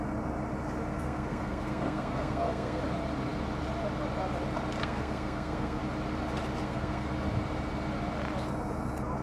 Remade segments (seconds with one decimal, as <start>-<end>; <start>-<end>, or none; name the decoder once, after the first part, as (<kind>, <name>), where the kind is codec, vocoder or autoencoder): 0.9-2.8 (codec, SNAC); 4.8-5.8; 6.6-7.1